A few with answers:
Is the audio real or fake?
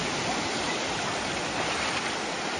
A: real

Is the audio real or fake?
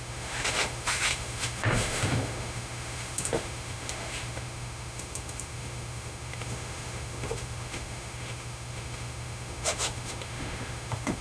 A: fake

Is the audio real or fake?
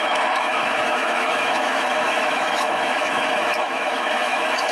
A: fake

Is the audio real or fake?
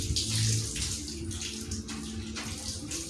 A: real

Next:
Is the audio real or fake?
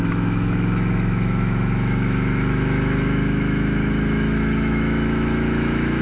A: fake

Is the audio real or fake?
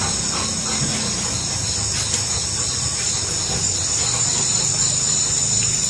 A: real